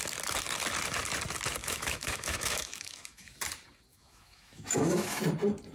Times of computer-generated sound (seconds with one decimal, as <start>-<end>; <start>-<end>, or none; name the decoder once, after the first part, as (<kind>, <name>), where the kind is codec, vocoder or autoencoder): 1.6-3.4 (autoencoder, DAC-VAE); 3.9-5.2